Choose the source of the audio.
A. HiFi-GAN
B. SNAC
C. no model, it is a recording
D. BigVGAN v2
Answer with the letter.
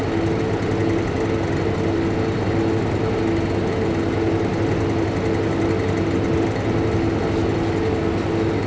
C